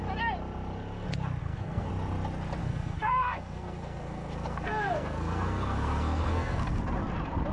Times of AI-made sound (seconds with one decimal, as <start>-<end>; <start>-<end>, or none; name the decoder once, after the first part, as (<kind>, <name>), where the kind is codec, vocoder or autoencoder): 1.4-1.9 (codec, SNAC); 2.6-6.8